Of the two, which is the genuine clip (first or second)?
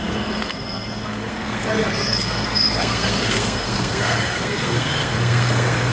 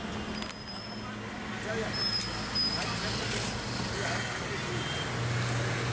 second